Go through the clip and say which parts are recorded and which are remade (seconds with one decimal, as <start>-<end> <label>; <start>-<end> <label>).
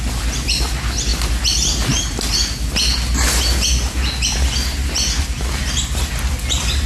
0.0-6.9 recorded